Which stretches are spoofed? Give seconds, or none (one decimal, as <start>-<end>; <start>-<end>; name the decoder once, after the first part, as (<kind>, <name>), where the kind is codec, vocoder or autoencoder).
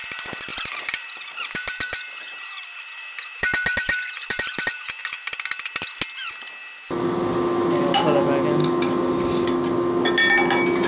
0.5-5.0 (vocoder, BigVGAN v2)